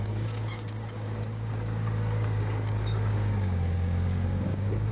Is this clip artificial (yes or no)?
yes